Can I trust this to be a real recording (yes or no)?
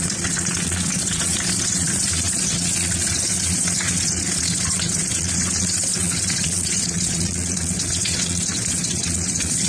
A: no